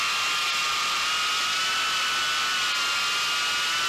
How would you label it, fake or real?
real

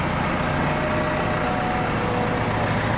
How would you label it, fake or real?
real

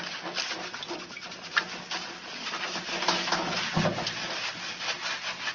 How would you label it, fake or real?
real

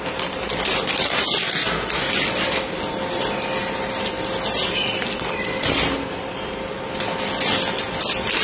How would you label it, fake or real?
fake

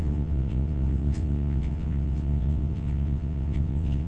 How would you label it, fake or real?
fake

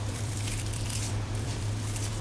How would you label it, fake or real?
fake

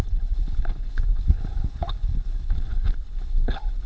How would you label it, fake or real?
fake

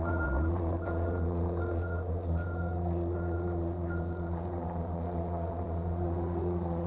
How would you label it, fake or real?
fake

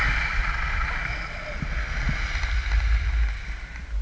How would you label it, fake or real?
real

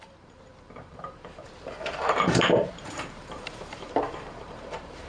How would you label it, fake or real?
fake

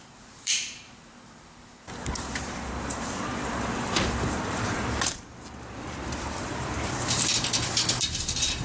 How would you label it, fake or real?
fake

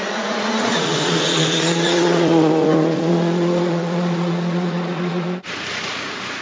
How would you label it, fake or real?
fake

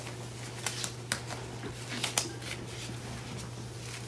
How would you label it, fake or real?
real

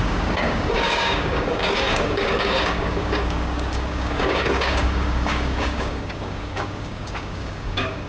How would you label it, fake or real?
fake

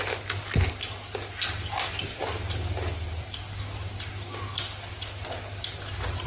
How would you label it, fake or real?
real